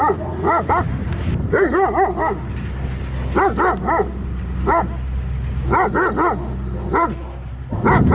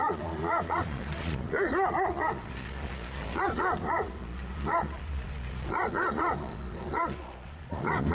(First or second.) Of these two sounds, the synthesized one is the second